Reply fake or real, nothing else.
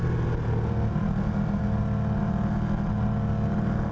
real